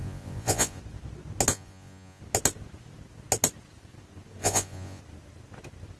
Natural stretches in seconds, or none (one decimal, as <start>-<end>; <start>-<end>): 0.8-1.5; 2.2-4.4; 5.0-6.0